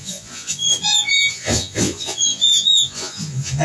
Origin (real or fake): fake